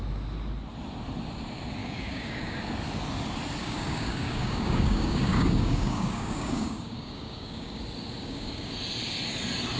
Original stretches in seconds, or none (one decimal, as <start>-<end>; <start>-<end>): 0.0-1.8; 2.6-3.6; 7.8-8.2; 8.7-9.8